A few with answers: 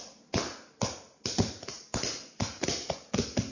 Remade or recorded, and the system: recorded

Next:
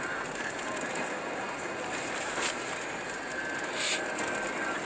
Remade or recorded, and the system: recorded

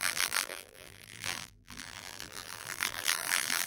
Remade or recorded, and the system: remade, vocoder, BigVGAN v2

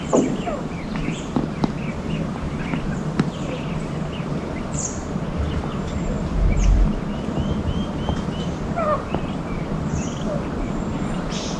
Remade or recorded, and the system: remade, vocoder, BigVGAN v2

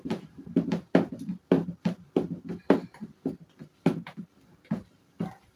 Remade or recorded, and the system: remade, vocoder, BigVGAN v2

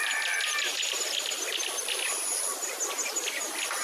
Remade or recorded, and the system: recorded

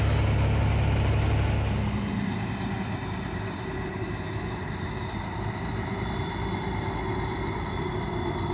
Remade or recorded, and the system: recorded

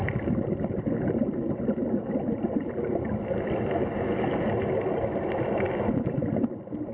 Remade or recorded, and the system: recorded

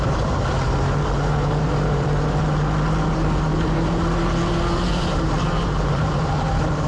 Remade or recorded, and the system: remade, vocoder, BigVGAN v2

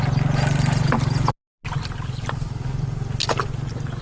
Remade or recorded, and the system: recorded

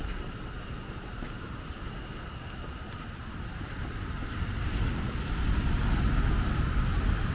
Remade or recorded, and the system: recorded